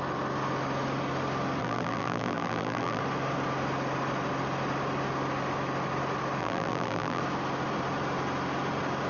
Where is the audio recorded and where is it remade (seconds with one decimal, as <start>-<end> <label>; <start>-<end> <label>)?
0.0-1.6 recorded; 1.6-3.0 remade; 3.0-6.4 recorded; 6.4-7.2 remade; 7.2-9.1 recorded